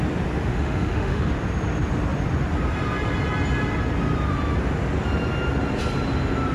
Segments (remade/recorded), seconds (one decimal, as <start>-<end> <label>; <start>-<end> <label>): 0.0-0.5 recorded; 0.5-1.3 remade; 1.3-6.5 recorded